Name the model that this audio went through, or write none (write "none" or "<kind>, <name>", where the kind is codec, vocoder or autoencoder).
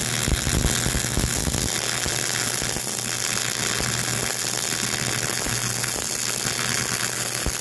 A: none